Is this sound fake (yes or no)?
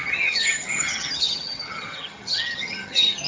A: yes